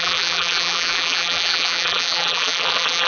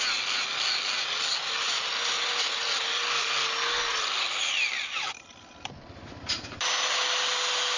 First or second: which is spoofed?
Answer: first